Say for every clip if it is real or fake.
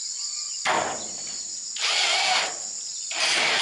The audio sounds real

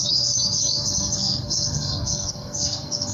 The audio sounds fake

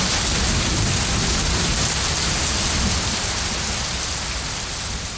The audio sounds real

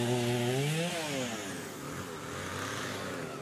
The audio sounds real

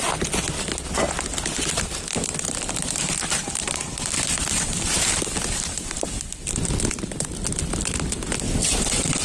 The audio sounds real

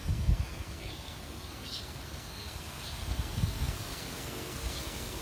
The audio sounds fake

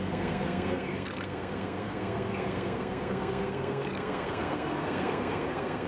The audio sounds fake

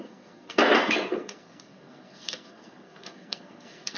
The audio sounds fake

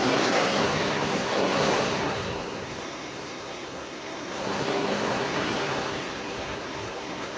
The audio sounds fake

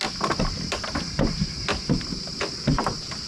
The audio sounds real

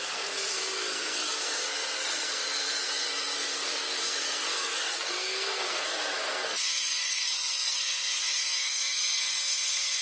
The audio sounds fake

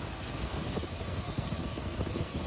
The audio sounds fake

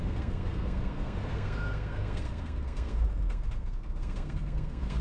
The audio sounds fake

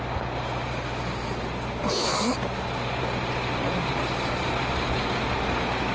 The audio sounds real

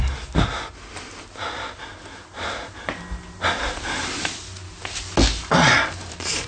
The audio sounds real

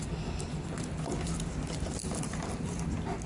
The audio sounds real